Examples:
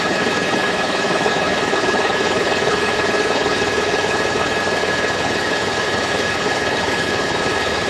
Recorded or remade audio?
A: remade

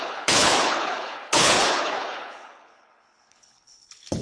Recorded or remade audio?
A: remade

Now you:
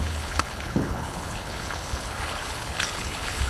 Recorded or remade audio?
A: remade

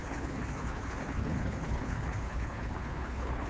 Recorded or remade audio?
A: remade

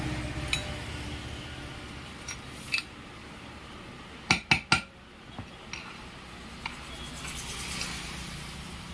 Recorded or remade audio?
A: recorded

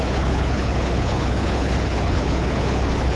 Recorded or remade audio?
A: remade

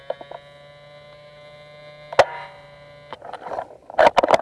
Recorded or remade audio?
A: recorded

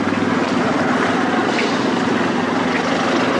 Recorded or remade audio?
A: recorded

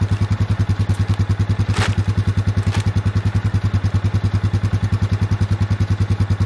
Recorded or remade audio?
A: recorded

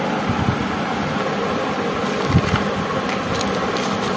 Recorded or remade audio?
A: recorded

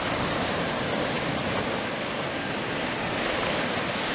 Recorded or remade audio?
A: recorded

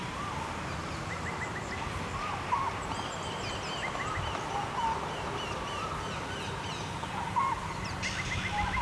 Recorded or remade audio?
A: recorded